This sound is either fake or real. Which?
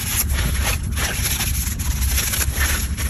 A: real